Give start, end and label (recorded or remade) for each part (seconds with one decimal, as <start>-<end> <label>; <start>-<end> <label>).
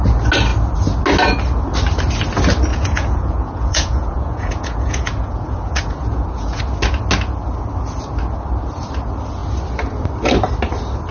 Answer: 0.0-2.7 recorded; 2.7-6.6 remade; 6.6-11.1 recorded